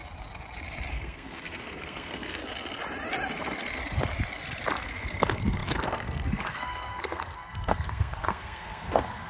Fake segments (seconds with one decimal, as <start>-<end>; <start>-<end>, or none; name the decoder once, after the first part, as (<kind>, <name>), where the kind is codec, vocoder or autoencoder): 0.9-2.4 (codec, SNAC); 4.9-9.3